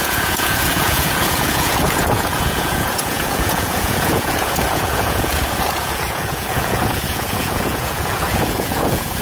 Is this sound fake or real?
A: fake